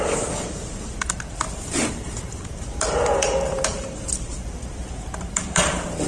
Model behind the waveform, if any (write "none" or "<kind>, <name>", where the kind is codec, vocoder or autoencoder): vocoder, BigVGAN v2